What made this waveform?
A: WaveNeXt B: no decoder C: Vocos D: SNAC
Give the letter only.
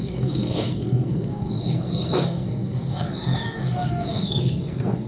D